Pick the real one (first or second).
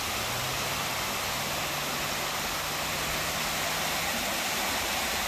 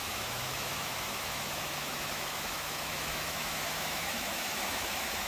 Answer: first